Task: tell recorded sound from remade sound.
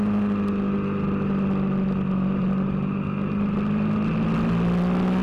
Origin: recorded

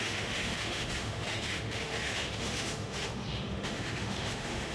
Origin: remade